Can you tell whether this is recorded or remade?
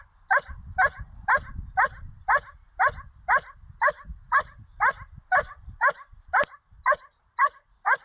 recorded